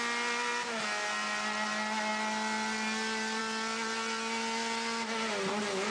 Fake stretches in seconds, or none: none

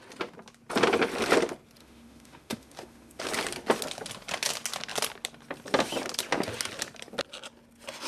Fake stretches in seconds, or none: 1.8-3.2